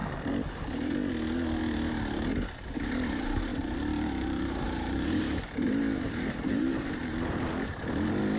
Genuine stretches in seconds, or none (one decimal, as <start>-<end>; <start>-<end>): 0.0-3.5; 7.5-8.4